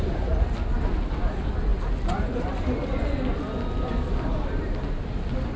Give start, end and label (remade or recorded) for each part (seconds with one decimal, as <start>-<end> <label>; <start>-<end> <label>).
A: 0.0-5.6 recorded